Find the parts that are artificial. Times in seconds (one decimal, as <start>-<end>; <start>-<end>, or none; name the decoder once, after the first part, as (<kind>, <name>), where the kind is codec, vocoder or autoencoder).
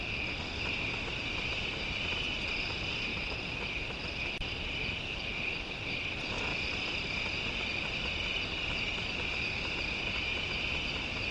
3.1-4.2 (vocoder, BigVGAN v2); 6.5-8.8